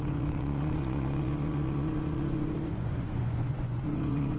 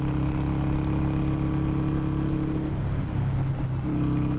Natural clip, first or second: second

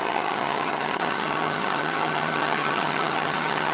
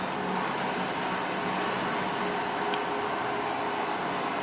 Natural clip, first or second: second